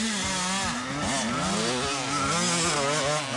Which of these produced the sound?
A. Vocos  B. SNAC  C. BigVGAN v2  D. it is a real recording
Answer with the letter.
D